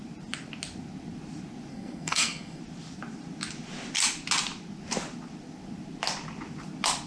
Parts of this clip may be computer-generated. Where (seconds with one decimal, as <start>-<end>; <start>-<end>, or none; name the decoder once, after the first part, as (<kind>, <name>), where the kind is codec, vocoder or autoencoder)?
1.7-2.6 (codec, SNAC)